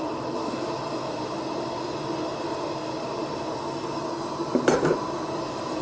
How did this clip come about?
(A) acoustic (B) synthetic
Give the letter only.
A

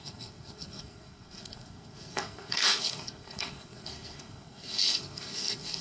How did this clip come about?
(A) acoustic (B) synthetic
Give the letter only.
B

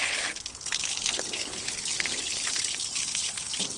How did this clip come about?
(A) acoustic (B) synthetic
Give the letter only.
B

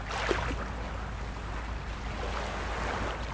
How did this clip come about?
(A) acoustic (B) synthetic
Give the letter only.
A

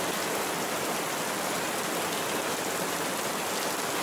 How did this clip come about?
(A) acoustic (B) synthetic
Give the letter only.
A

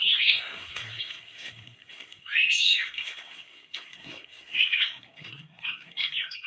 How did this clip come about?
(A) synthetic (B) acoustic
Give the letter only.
A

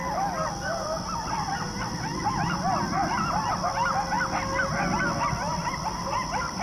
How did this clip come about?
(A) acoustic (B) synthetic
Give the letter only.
A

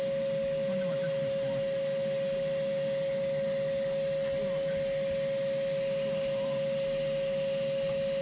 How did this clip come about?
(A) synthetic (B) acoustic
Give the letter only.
B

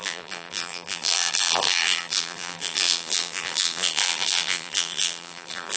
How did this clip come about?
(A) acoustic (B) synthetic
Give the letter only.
B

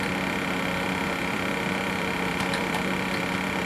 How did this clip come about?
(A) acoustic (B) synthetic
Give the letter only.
B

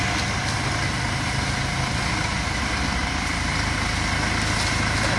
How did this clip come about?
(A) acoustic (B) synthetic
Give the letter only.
A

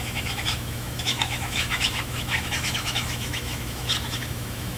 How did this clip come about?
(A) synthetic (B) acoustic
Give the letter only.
A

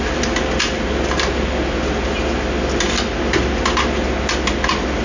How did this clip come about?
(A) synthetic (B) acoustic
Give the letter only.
B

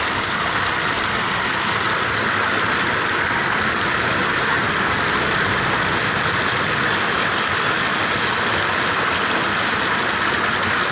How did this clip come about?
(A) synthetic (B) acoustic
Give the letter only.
B